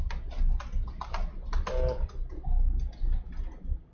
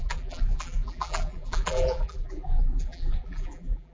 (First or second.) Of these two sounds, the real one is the first